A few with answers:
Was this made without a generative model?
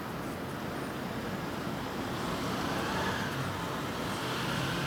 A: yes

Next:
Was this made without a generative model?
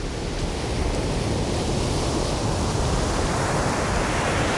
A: yes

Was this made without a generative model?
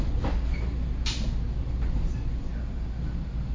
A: yes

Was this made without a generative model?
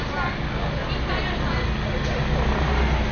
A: yes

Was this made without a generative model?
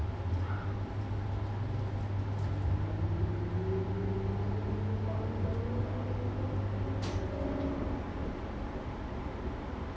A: yes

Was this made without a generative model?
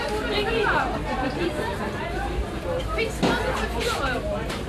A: yes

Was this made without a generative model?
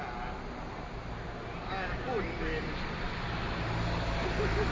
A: yes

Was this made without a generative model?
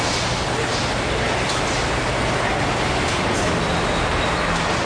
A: yes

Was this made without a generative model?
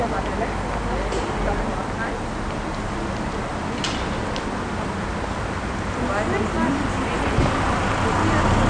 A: yes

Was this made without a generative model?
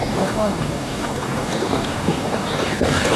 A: no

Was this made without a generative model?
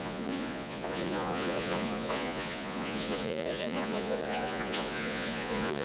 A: no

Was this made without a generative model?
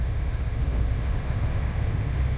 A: no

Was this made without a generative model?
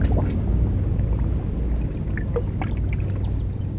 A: yes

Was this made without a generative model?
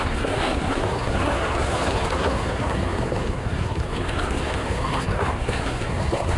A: no